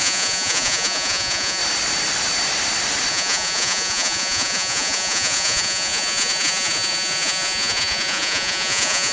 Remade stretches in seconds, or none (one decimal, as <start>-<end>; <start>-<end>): 0.0-1.6; 3.1-9.1